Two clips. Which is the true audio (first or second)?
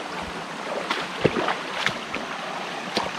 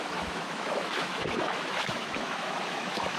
first